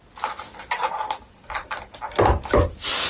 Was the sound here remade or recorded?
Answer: recorded